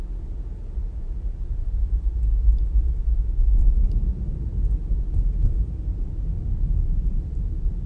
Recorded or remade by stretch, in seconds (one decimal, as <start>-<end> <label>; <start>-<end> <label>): 0.0-0.8 recorded; 0.8-3.0 remade; 3.0-3.6 recorded; 3.6-6.4 remade; 6.4-7.0 recorded; 7.0-7.9 remade

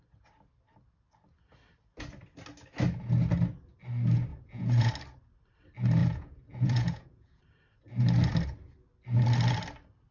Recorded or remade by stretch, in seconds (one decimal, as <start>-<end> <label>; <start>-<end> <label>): 0.0-4.3 recorded; 4.3-4.9 remade; 4.9-6.0 recorded; 6.0-7.4 remade; 7.4-10.1 recorded